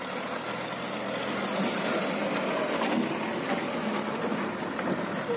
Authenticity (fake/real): real